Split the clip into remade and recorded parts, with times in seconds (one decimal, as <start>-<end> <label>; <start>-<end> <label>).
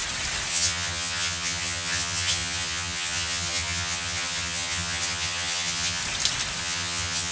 0.0-0.5 recorded; 0.5-6.0 remade; 6.0-6.6 recorded; 6.6-7.3 remade